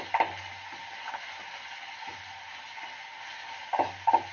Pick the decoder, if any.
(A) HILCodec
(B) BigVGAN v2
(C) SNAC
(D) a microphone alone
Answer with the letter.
D